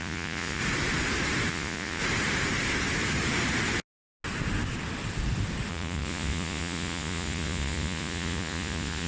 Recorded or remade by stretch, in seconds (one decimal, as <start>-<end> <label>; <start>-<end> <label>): 0.0-0.6 remade; 0.6-1.5 recorded; 1.5-2.0 remade; 2.0-5.7 recorded; 5.7-9.1 remade